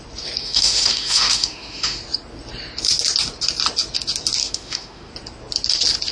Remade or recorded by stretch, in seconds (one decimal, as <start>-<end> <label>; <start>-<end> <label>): 0.0-0.4 recorded; 0.4-2.0 remade; 2.0-4.4 recorded; 4.4-5.1 remade; 5.1-6.1 recorded